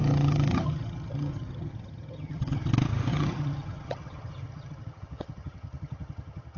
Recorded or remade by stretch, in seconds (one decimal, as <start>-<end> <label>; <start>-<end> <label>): 0.0-2.7 remade; 2.7-3.1 recorded; 3.1-6.6 remade